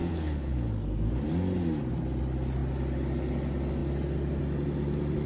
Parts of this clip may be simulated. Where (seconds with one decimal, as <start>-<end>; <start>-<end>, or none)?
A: 0.0-0.7